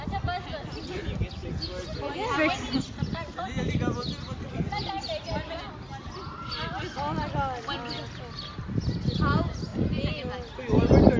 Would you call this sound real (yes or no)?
yes